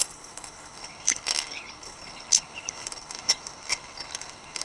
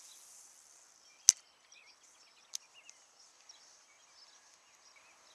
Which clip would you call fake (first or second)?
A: first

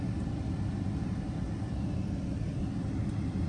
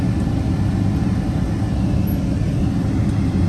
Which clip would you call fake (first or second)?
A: first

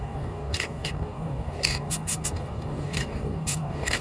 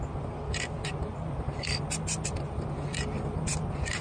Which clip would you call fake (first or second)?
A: first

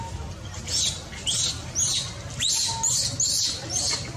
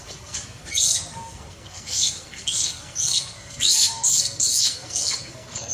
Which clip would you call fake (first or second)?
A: second